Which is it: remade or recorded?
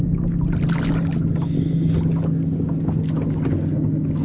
recorded